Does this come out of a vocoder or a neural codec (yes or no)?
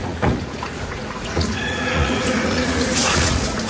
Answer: yes